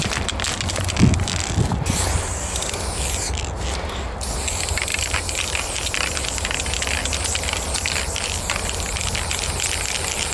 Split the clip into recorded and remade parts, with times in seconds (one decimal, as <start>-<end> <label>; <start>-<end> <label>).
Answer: 0.0-10.3 recorded